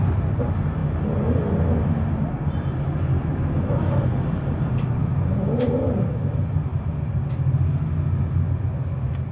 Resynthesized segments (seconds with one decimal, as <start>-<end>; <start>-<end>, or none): 3.3-6.2; 6.7-7.3